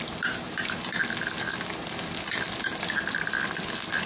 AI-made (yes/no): no